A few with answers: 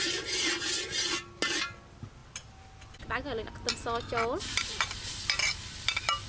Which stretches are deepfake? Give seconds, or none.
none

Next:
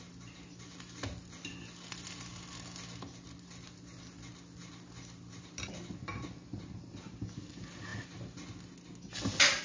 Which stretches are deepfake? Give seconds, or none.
none

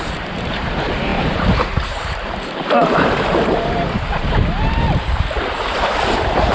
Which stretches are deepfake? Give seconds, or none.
0.0-6.5

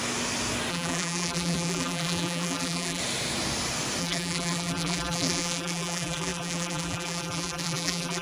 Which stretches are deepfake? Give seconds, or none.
0.7-3.0; 4.0-8.2

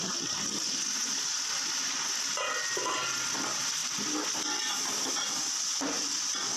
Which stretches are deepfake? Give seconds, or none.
none

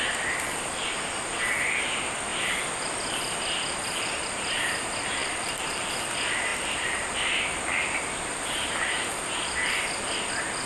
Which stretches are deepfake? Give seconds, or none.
5.2-5.9

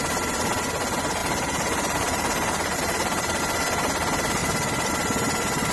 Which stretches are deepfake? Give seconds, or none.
1.2-3.4; 4.4-4.9

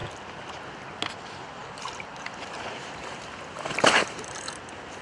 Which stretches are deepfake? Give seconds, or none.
1.6-4.6